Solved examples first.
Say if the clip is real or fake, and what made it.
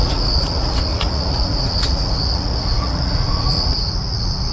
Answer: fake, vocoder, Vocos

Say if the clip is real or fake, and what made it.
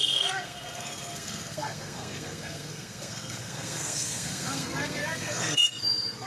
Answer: fake, codec, SNAC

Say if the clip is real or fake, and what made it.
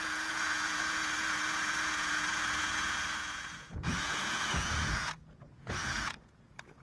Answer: fake, vocoder, Vocos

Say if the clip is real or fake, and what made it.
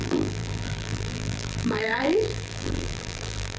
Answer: fake, vocoder, BigVGAN v2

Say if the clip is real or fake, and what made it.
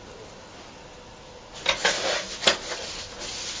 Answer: real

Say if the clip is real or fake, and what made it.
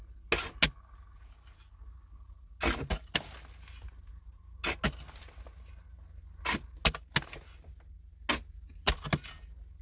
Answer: real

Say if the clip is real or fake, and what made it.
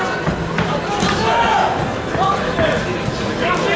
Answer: real